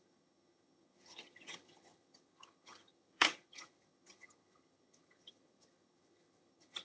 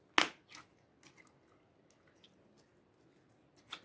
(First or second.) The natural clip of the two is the second